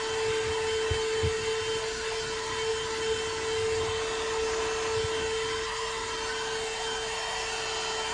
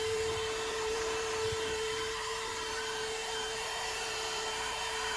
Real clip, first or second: first